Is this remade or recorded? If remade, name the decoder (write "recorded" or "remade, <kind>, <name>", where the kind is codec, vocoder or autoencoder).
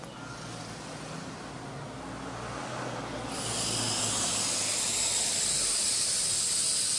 recorded